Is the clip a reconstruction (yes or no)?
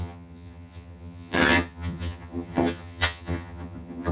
yes